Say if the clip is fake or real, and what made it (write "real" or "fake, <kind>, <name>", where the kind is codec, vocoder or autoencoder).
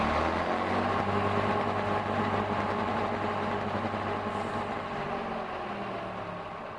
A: real